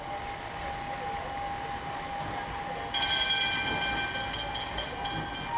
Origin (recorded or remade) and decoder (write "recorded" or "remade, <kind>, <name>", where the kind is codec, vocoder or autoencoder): recorded